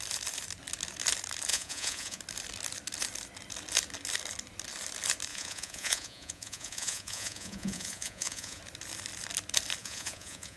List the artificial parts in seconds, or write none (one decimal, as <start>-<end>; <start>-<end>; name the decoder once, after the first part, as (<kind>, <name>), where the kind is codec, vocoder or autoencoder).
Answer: 1.5-2.2 (vocoder, Vocos); 5.3-8.6; 9.8-10.6